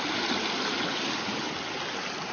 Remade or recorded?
recorded